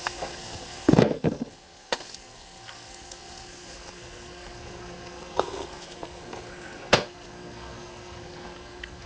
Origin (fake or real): fake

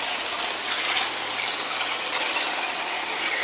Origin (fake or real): real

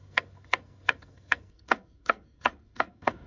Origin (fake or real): fake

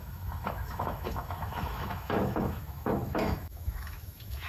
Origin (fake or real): fake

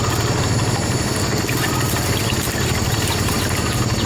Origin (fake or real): real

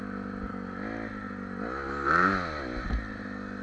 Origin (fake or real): real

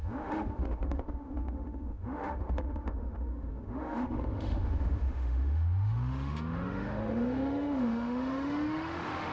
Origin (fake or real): fake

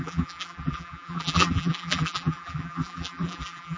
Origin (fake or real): fake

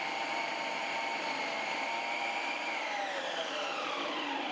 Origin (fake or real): fake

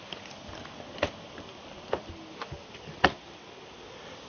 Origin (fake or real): real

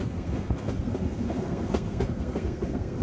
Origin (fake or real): fake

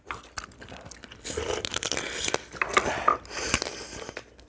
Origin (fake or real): real